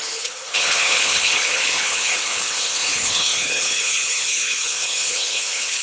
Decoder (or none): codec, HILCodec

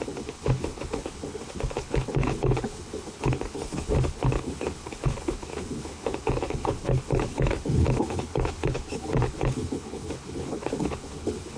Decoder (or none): codec, HILCodec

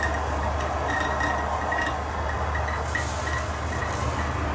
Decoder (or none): none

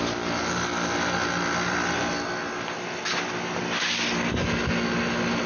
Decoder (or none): none